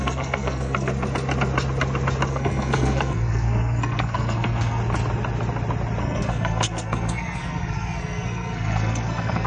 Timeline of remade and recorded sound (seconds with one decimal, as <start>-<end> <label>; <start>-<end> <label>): 0.0-0.9 remade; 0.9-2.3 recorded; 2.3-4.8 remade; 4.8-6.0 recorded; 6.0-9.5 remade